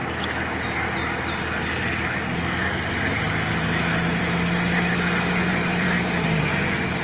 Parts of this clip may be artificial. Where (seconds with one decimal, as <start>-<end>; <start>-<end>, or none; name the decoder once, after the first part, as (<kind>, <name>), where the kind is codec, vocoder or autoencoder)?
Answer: 5.5-6.4 (vocoder, BigVGAN v2)